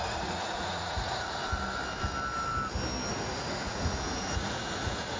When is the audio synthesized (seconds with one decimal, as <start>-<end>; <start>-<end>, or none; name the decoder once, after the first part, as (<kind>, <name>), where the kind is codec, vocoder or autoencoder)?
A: 0.0-1.4 (vocoder, Vocos); 3.1-5.2